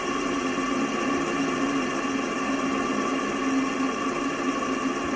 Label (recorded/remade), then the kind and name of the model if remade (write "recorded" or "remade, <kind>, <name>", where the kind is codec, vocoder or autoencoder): recorded